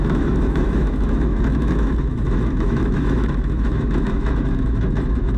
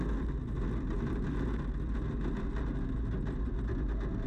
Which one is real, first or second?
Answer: second